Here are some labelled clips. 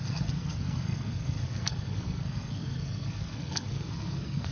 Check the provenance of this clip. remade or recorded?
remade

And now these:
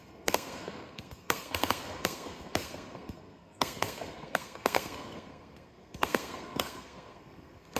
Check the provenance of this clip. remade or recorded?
remade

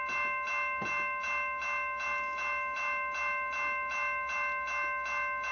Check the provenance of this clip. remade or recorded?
recorded